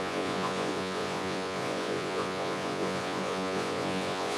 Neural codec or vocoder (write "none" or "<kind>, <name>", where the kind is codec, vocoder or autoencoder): vocoder, Vocos